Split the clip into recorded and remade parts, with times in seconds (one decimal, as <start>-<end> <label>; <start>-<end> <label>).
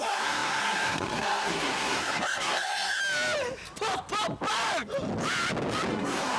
0.0-3.0 remade; 3.0-5.9 recorded; 5.9-6.4 remade